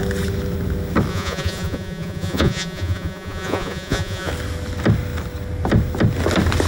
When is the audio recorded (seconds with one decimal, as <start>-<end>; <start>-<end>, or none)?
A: 0.0-1.1; 4.3-6.7